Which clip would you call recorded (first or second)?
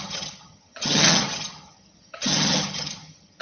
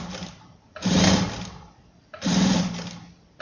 second